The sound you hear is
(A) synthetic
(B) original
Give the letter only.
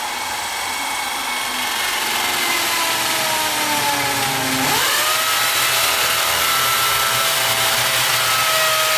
B